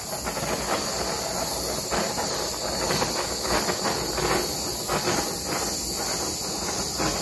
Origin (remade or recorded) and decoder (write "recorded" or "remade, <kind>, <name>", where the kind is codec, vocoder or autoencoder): recorded